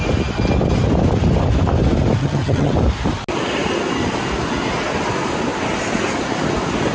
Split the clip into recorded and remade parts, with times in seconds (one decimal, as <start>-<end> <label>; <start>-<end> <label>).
0.0-2.2 recorded; 2.2-2.7 remade; 2.7-6.9 recorded